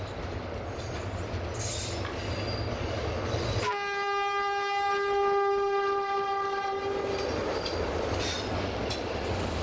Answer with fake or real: real